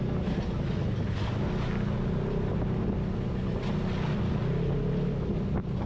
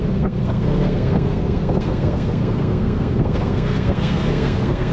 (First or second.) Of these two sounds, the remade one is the second